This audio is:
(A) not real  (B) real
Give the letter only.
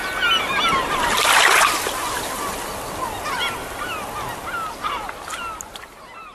B